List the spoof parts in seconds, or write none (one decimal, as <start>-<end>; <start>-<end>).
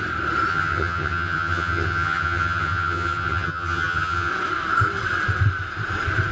0.5-4.3